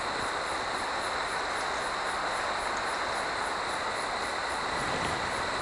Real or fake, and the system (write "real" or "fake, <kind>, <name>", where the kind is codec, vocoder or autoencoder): real